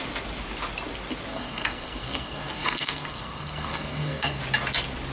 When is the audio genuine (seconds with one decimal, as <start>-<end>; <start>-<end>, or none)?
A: 0.0-1.3; 4.4-5.1